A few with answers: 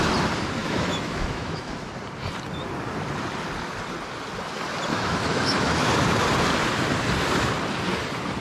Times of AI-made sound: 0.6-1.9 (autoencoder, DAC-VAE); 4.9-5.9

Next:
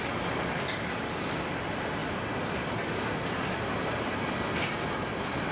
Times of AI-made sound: none